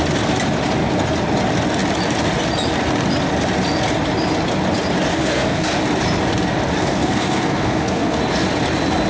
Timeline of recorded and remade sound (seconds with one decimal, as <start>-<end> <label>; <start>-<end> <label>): 0.0-5.1 recorded; 5.1-5.8 remade; 5.8-6.8 recorded; 6.8-8.2 remade; 8.2-9.1 recorded